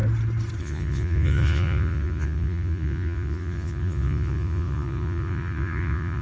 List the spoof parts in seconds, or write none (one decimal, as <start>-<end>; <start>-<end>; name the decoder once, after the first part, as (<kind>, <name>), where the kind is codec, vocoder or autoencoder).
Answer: 0.6-6.2 (vocoder, Vocos)

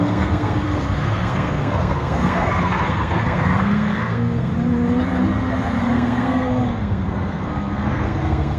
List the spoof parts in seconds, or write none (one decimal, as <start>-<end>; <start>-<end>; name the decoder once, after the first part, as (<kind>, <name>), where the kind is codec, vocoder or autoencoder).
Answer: 0.0-4.5 (codec, SNAC); 5.8-8.6

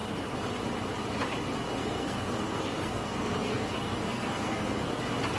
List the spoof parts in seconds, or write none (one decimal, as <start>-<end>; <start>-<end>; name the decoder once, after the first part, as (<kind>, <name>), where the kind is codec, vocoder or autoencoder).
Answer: 1.8-5.0 (codec, SNAC)

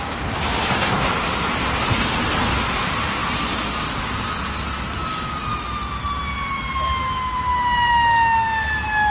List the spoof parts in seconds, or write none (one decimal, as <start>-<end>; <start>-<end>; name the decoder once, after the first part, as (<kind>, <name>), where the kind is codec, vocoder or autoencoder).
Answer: none